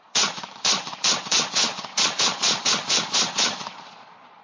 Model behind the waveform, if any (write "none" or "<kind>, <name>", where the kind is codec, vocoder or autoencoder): vocoder, Vocos